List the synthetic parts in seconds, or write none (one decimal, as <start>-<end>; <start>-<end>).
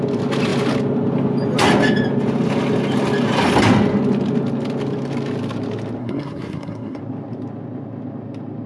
6.0-7.0